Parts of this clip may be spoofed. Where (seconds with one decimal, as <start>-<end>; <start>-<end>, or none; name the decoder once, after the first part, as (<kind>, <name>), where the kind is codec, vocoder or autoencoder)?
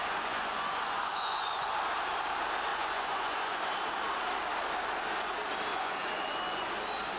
0.0-1.8 (vocoder, Vocos); 2.7-3.6; 5.7-6.7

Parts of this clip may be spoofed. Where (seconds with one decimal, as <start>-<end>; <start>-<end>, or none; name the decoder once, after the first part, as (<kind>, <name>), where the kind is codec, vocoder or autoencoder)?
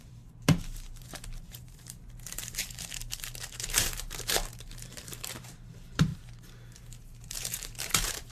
0.0-6.1 (vocoder, BigVGAN v2); 7.4-8.3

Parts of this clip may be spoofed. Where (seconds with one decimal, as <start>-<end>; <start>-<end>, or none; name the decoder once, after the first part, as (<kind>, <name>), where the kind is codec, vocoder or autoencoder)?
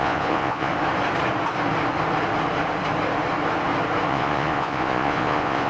0.0-0.7 (vocoder, Vocos); 4.1-5.7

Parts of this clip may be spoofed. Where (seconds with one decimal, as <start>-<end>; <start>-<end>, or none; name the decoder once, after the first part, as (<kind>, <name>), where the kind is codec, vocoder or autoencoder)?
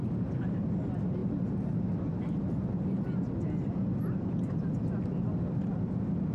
none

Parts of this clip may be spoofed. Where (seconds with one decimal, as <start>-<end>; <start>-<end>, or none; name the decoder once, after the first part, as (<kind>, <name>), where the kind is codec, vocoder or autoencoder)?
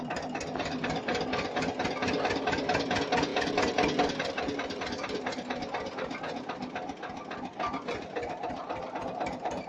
none